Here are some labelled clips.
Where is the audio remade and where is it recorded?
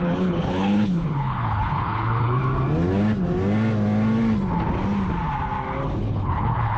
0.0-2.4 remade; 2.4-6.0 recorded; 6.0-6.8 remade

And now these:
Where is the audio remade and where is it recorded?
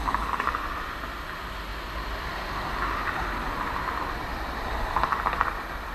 0.0-5.9 recorded